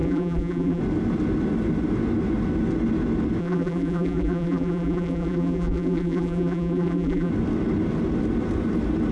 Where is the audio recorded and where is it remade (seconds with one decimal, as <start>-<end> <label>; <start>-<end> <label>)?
0.0-0.8 remade; 0.8-3.4 recorded; 3.4-7.3 remade; 7.3-9.1 recorded